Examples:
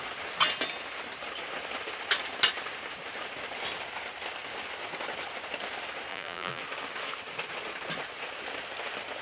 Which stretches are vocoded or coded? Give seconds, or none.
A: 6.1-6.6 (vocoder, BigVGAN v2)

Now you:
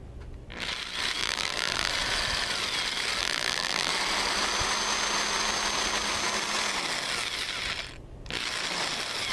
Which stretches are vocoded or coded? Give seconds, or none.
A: 1.2-1.9 (vocoder, BigVGAN v2); 3.2-3.9